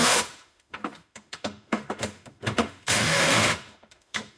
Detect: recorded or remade remade